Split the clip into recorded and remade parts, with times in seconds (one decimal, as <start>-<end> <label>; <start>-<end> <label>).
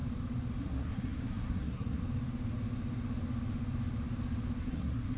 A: 0.0-0.6 recorded; 0.6-2.0 remade; 2.0-4.6 recorded; 4.6-5.2 remade